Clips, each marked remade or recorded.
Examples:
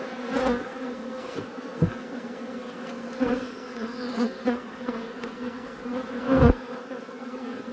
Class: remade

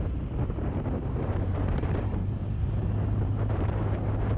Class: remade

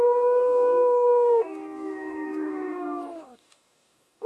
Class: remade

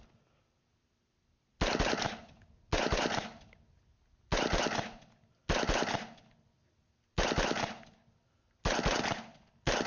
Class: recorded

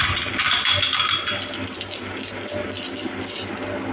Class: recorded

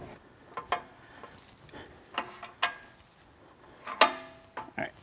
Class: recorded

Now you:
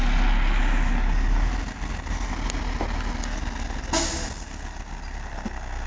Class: recorded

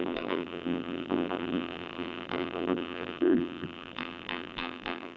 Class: remade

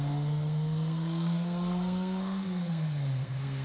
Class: remade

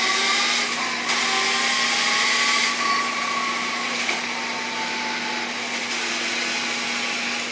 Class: recorded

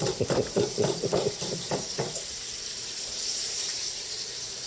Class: remade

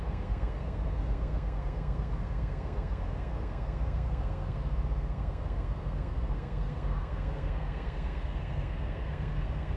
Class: remade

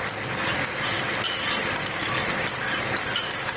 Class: recorded